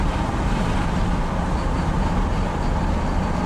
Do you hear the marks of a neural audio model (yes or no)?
no